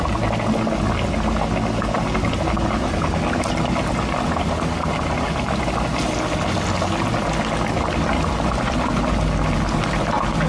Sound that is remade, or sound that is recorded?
recorded